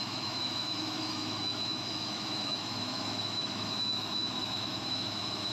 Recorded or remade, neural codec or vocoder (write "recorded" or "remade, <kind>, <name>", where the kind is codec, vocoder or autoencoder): remade, autoencoder, DAC-VAE